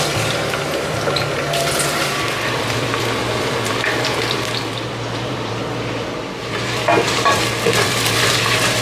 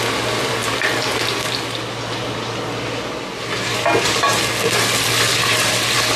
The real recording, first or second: second